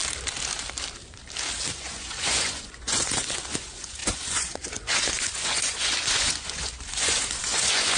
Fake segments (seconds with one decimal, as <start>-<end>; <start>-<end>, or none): 1.8-8.0